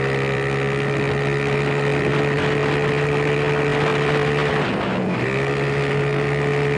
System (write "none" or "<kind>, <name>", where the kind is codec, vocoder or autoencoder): none